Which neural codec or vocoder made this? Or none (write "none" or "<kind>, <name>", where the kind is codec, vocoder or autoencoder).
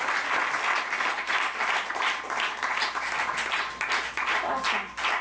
none